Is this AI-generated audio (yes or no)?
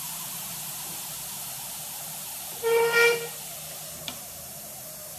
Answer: no